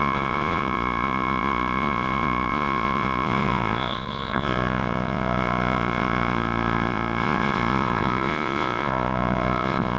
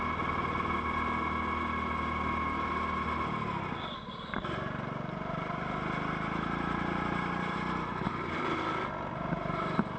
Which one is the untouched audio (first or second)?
second